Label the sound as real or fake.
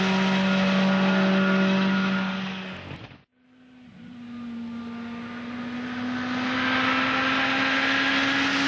real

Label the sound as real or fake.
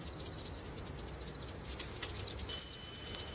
real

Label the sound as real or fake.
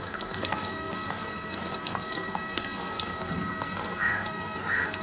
fake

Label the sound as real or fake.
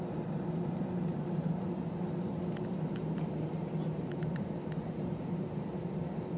fake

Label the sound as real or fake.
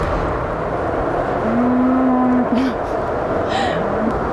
real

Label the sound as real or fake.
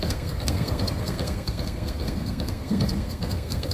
fake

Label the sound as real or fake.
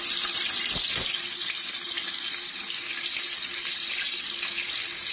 real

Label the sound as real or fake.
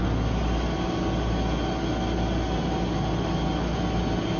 real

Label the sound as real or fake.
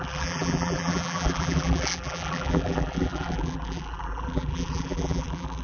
fake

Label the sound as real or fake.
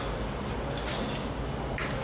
real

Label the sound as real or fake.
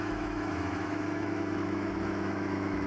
fake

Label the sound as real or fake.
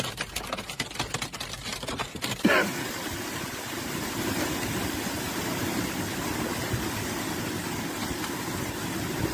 real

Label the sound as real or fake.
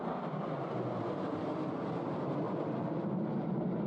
real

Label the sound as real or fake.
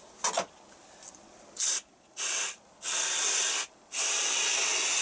real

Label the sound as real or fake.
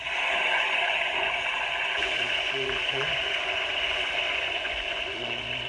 fake